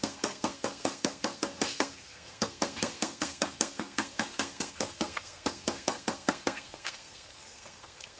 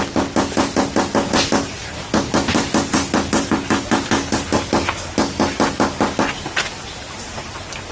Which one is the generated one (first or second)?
first